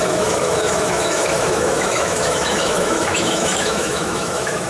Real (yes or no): no